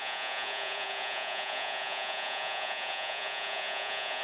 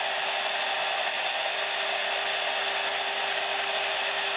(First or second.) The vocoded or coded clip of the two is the first